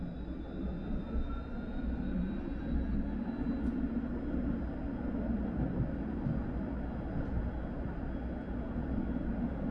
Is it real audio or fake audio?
real